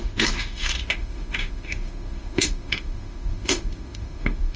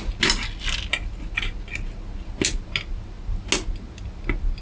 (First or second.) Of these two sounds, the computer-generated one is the first